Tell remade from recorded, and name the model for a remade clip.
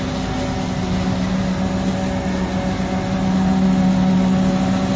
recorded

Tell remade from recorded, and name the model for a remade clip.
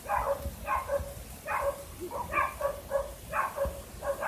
recorded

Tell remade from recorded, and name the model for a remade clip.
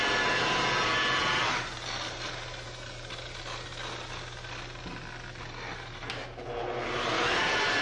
recorded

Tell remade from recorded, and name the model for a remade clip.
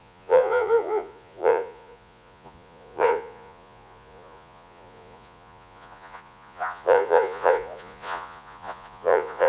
remade, vocoder, Vocos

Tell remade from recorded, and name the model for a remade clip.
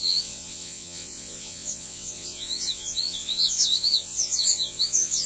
remade, vocoder, WaveNeXt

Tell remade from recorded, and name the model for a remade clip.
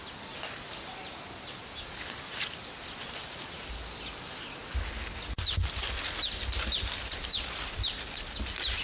recorded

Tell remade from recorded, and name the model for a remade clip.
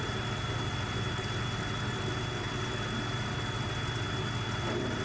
recorded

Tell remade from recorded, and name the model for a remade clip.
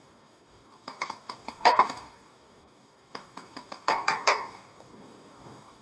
remade, codec, DAC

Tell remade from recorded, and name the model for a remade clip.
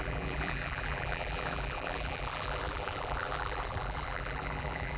remade, vocoder, BigVGAN v2